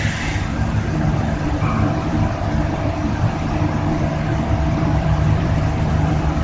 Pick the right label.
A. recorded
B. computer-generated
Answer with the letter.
B